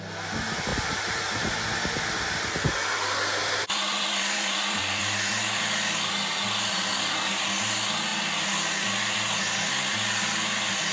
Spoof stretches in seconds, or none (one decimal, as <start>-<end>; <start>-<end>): 0.7-5.0